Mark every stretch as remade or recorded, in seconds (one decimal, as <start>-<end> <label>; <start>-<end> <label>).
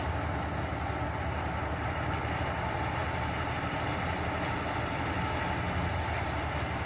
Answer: 0.0-6.9 recorded